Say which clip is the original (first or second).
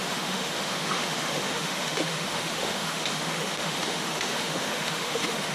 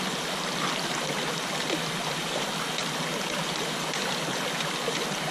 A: second